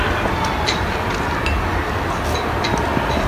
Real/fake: real